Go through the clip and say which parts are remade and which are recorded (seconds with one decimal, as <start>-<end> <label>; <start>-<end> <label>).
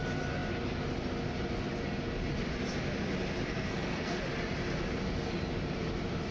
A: 0.0-3.5 recorded; 3.5-4.2 remade; 4.2-6.3 recorded